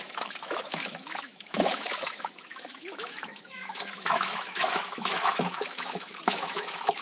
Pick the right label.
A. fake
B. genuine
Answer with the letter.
A